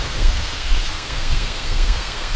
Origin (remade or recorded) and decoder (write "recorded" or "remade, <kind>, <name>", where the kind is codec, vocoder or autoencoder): remade, codec, SNAC